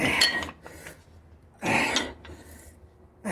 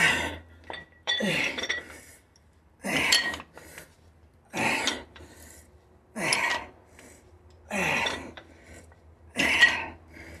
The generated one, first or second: second